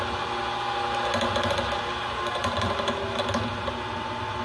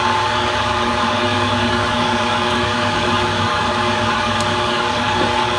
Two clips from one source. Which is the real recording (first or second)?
first